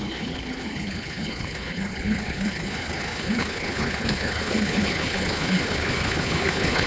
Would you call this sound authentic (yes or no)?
no